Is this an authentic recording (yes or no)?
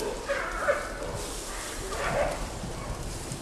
yes